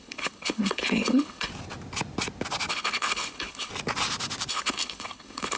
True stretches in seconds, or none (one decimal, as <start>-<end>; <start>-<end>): 1.5-2.7; 3.7-4.5